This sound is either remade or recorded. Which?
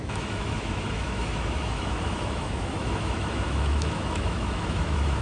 remade